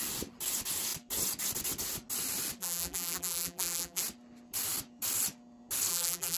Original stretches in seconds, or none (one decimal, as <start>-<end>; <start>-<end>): 0.0-2.6; 4.0-5.9